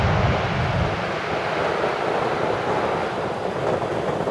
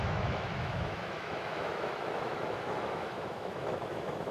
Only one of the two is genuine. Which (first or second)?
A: first